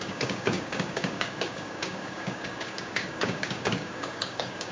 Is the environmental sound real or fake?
fake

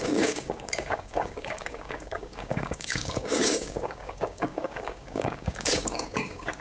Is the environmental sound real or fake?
fake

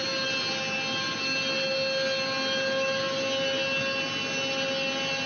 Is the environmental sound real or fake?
real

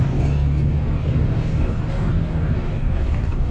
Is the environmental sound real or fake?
fake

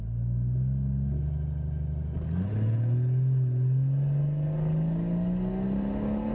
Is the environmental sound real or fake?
real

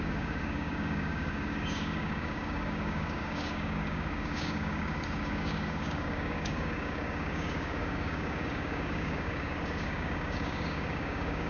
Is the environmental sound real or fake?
fake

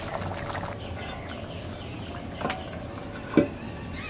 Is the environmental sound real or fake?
real